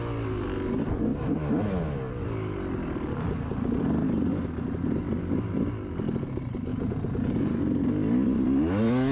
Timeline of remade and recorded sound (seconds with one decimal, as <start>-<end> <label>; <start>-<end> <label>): 0.0-6.7 recorded; 6.7-7.5 remade; 7.5-9.1 recorded